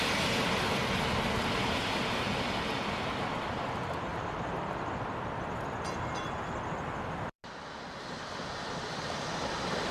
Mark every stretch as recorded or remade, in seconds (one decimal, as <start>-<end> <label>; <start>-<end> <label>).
0.0-4.1 recorded; 4.1-7.4 remade; 7.4-9.9 recorded